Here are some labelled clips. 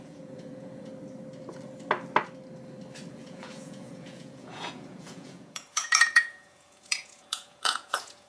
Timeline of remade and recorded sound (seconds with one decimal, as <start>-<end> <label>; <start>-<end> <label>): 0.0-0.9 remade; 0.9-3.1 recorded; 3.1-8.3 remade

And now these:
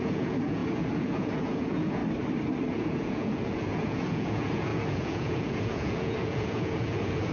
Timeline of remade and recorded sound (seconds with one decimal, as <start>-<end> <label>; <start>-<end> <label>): 0.0-2.0 remade; 2.0-2.7 recorded; 2.7-7.3 remade

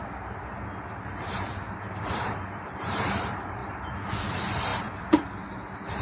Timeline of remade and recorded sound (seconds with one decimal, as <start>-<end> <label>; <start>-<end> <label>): 0.0-0.8 recorded; 0.8-3.6 remade; 3.6-4.3 recorded; 4.3-4.7 remade; 4.7-6.0 recorded

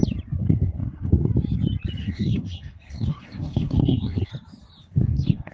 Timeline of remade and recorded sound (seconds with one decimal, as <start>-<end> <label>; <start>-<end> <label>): 0.0-0.4 recorded; 0.4-1.3 remade; 1.3-2.0 recorded; 2.0-4.3 remade; 4.3-4.8 recorded; 4.8-5.5 remade

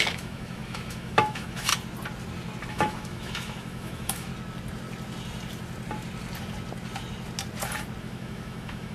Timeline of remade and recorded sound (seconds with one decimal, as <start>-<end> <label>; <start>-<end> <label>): 0.0-1.7 remade; 1.7-2.7 recorded; 2.7-4.3 remade; 4.3-8.0 recorded; 8.0-8.9 remade

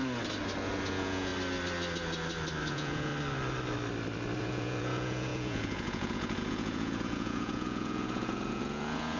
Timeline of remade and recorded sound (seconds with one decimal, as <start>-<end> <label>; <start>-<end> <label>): 0.0-0.9 recorded; 0.9-1.3 remade; 1.3-2.7 recorded; 2.7-3.1 remade; 3.1-4.4 recorded; 4.4-9.2 remade